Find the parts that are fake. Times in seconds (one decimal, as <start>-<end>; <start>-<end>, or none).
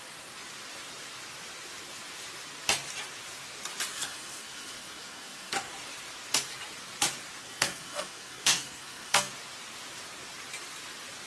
3.9-5.7; 7.4-9.3